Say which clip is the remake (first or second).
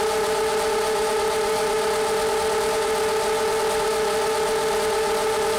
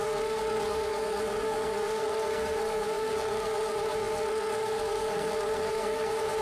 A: second